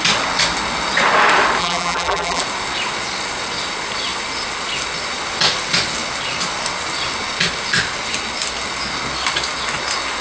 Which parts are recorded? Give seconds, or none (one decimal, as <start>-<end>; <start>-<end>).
0.0-1.6; 2.4-10.2